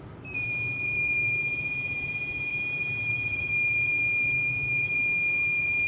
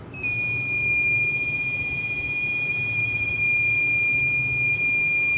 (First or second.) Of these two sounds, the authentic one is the second